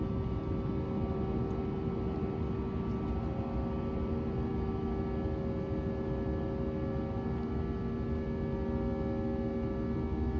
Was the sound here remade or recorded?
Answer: recorded